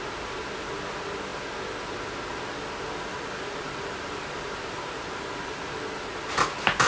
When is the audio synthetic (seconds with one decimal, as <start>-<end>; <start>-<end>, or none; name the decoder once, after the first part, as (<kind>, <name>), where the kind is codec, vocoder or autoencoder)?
3.1-5.6 (vocoder, BigVGAN v2)